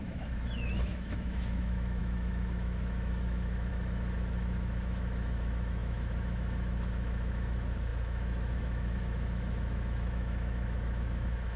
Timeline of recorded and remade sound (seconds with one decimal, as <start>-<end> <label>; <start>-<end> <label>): 0.0-11.6 remade